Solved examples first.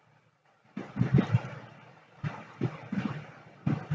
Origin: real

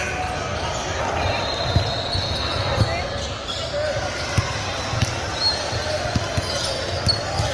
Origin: real